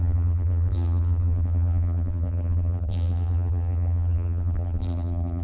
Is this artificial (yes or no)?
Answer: yes